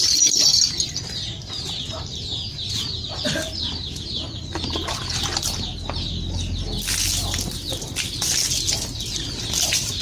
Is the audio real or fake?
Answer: real